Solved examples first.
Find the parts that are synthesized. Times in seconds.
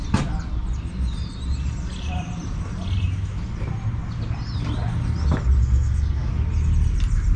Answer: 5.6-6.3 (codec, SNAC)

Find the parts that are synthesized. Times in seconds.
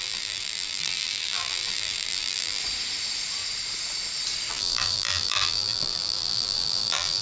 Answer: 0.0-2.6 (vocoder, BigVGAN v2); 4.5-7.2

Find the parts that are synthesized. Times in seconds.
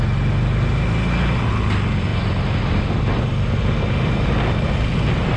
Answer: none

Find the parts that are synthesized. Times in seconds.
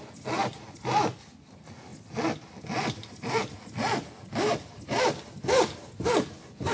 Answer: 4.5-5.3 (vocoder, BigVGAN v2)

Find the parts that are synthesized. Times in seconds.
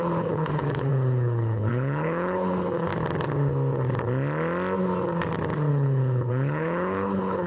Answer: 0.0-2.9 (codec, HILCodec); 5.7-7.5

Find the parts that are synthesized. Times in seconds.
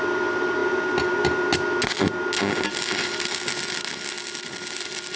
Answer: none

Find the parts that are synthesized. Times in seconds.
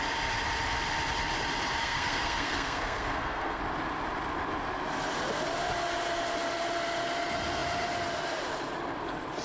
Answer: 1.8-3.6 (codec, SNAC)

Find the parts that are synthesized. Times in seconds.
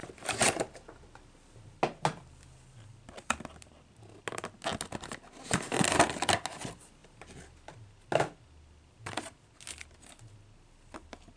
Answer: none